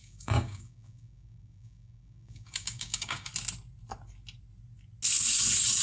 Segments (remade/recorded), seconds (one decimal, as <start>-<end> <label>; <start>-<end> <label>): 0.0-3.3 remade; 3.3-5.8 recorded